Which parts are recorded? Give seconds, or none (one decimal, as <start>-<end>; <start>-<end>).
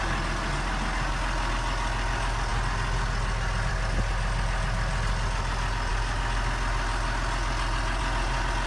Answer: 0.0-8.7